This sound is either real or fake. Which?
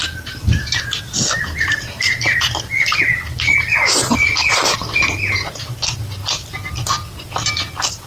fake